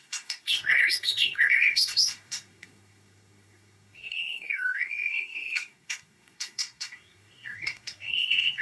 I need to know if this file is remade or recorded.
remade